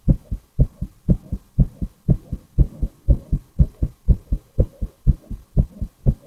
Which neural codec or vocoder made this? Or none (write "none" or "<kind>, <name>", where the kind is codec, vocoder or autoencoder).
none